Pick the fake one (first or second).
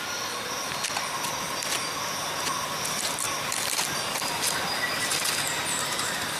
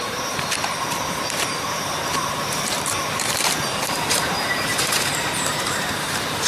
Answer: second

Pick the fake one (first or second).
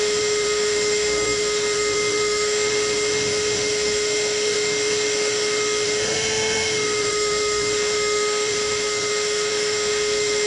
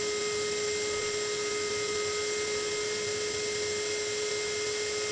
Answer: first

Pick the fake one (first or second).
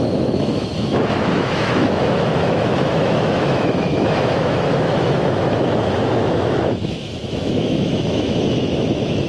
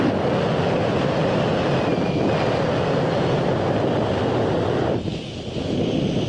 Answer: first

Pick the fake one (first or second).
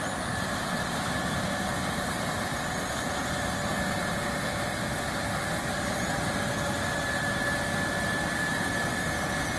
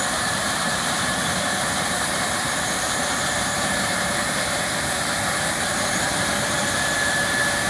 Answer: second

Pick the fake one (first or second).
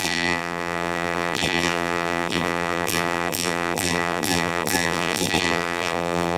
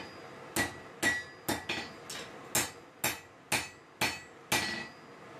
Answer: first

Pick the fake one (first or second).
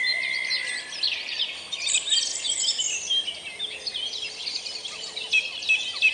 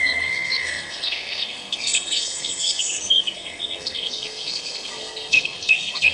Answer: second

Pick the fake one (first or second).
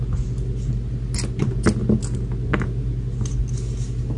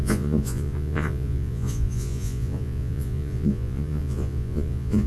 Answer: second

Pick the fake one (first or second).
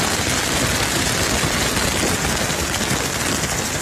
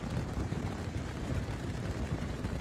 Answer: second